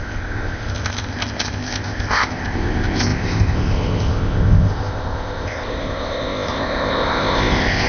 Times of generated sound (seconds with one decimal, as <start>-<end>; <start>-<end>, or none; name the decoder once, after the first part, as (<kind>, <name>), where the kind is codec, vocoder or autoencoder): 0.0-7.9 (codec, ZipCodec)